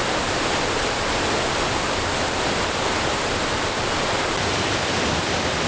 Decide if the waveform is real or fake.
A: fake